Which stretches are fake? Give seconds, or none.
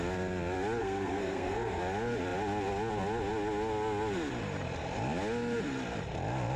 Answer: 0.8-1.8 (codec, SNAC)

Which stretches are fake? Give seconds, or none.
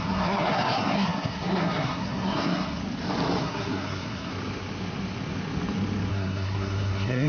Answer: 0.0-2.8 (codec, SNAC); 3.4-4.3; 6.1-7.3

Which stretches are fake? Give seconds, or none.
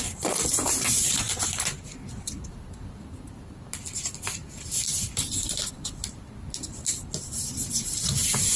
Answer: none